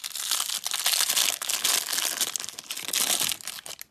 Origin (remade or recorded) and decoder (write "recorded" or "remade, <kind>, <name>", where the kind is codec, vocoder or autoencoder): recorded